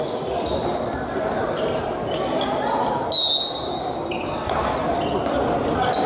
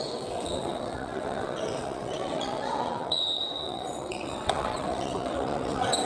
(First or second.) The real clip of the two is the first